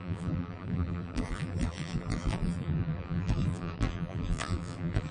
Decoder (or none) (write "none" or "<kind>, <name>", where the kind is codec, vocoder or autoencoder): vocoder, BigVGAN v2